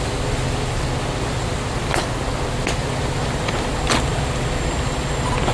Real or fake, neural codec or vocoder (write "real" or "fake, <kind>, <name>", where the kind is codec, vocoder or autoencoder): real